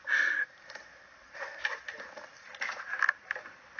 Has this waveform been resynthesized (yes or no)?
no